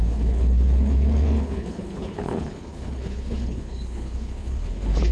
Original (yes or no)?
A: no